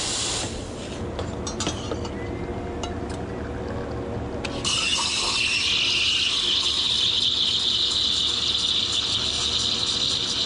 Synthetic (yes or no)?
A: no